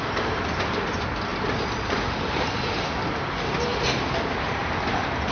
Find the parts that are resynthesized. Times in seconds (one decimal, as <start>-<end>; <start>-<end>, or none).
none